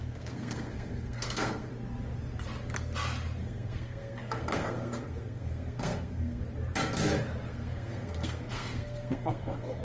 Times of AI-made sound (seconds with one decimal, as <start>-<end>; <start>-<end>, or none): 0.0-1.7; 3.4-6.4; 7.5-9.8